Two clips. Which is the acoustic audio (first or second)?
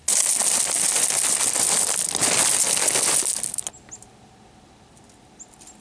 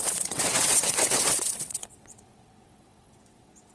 first